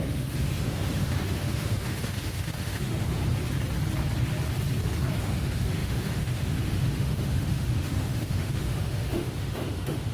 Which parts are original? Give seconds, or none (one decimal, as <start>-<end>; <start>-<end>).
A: 3.2-5.2